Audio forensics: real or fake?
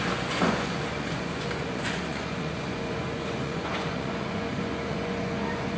fake